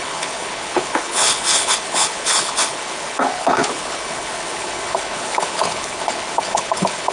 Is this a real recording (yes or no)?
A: no